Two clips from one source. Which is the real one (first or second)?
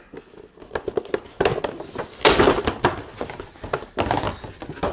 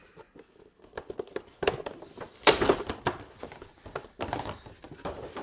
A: first